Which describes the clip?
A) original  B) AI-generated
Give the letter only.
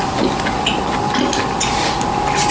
A